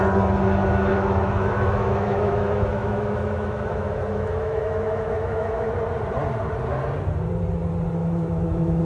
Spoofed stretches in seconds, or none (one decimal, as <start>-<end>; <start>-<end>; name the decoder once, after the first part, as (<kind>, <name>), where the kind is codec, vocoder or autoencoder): 0.9-5.7 (autoencoder, DAC-VAE); 8.0-8.8